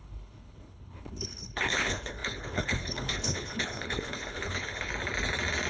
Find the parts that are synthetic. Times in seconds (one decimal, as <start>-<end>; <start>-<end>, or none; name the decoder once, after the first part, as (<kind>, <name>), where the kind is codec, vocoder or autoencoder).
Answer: 0.0-4.9 (codec, HILCodec)